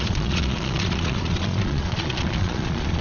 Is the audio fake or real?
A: fake